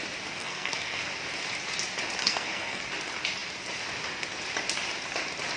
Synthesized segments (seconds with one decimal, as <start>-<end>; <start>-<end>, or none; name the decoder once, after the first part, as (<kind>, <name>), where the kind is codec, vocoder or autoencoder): 0.4-1.1 (codec, SNAC); 2.2-2.8